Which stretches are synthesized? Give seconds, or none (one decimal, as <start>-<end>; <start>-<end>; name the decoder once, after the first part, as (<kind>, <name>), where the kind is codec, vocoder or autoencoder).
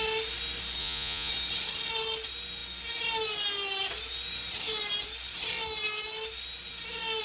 0.8-1.3 (vocoder, Vocos)